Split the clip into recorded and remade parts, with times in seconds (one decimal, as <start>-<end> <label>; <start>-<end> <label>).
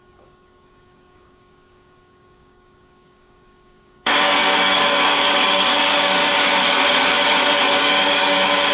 0.0-6.2 remade; 6.2-7.8 recorded; 7.8-8.7 remade